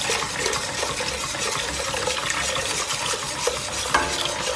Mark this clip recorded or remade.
recorded